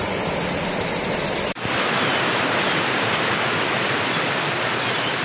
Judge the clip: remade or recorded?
remade